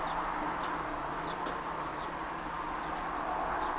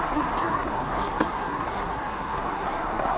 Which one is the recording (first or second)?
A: first